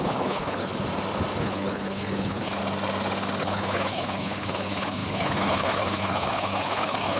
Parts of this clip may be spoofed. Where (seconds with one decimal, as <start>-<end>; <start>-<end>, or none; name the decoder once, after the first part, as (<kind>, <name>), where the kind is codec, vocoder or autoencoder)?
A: 0.0-0.7 (codec, HILCodec); 1.4-2.6; 3.4-7.2